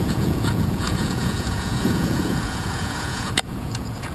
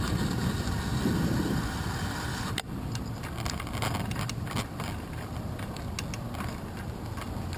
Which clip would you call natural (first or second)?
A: second